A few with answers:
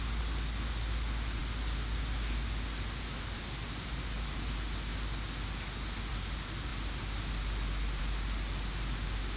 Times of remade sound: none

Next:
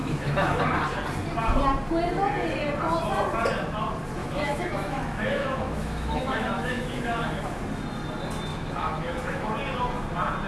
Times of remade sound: 0.0-0.6 (autoencoder, DAC-VAE); 4.2-7.6; 8.5-9.5

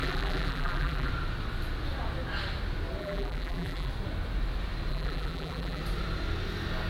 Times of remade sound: 0.0-1.1 (vocoder, BigVGAN v2); 3.0-3.9; 4.9-5.8

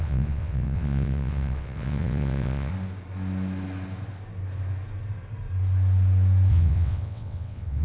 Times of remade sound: 0.0-2.7 (vocoder, WaveNeXt); 6.5-7.8

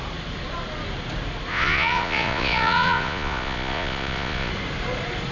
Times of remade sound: 1.5-4.5 (vocoder, Vocos)

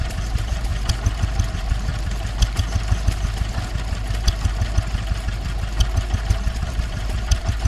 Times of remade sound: 0.0-0.7 (vocoder, BigVGAN v2); 1.5-1.9; 6.5-7.7

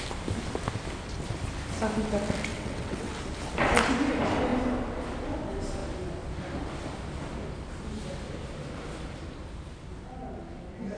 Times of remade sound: 2.5-3.1 (vocoder, WaveNeXt)